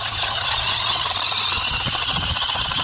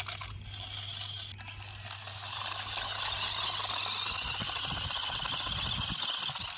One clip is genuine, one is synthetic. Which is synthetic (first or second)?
first